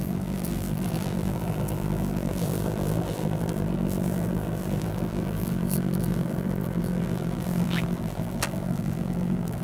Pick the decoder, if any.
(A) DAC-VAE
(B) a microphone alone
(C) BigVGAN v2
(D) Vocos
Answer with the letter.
C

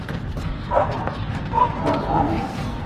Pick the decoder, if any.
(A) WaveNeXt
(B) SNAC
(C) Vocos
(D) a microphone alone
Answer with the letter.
B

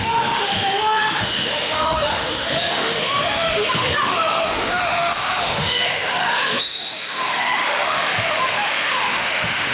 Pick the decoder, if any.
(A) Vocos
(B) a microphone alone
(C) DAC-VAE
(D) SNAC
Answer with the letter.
C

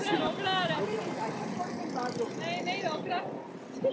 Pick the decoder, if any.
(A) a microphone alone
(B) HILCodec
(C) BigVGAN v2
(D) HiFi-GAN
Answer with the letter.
A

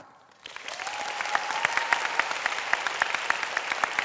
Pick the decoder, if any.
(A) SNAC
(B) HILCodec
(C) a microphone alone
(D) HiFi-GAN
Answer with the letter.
C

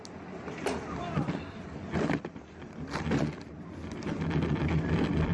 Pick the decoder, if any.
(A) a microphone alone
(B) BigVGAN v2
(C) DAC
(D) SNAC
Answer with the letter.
A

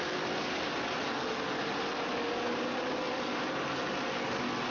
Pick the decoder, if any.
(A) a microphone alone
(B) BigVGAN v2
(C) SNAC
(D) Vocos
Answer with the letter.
A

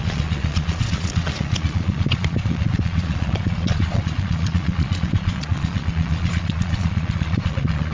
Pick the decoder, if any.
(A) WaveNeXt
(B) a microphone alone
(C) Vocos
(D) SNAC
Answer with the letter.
C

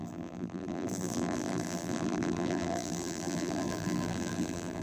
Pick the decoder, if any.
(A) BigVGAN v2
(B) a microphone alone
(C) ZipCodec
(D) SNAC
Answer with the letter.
A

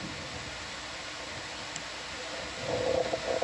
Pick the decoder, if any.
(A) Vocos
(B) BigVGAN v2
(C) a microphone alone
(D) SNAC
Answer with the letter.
C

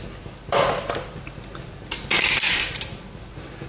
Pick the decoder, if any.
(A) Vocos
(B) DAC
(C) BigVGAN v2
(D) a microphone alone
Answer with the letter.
D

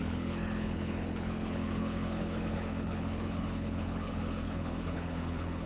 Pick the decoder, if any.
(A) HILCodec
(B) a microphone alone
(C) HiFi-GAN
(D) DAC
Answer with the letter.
A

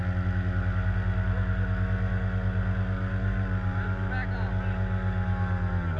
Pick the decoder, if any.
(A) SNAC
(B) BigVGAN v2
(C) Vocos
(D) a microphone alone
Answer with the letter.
D